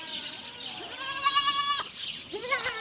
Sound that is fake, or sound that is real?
real